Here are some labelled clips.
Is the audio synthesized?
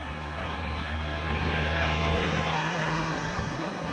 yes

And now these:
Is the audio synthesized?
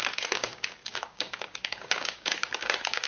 yes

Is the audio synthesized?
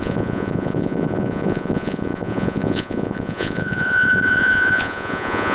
yes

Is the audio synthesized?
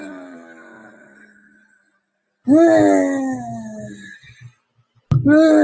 no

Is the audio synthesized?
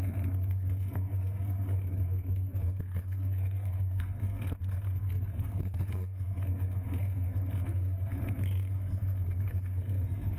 yes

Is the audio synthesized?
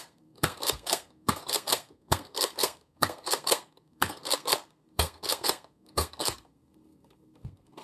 yes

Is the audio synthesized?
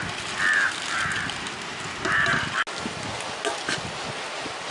no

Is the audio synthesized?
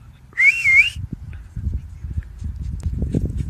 yes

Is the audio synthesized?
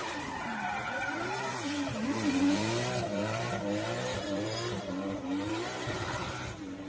yes